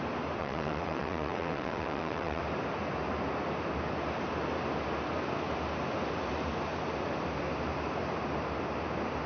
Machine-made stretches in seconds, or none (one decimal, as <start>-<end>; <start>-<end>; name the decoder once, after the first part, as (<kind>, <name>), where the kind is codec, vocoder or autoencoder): 0.4-2.4 (vocoder, WaveNeXt)